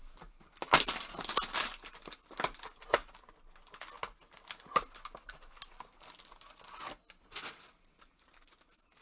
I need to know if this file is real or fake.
real